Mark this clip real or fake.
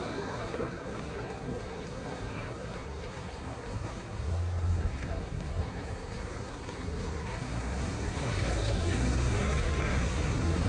fake